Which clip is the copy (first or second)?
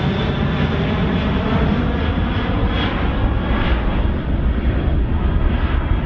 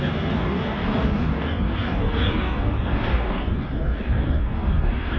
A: second